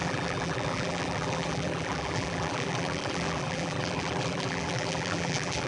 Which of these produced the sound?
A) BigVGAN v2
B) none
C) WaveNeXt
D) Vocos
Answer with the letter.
A